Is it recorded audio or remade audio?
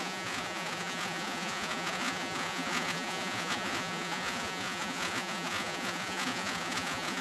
remade